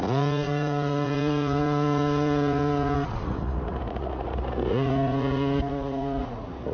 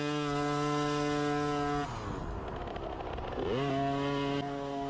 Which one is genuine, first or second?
second